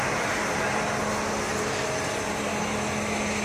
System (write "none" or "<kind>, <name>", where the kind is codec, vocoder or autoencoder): none